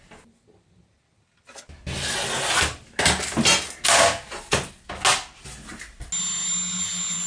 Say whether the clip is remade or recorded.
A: recorded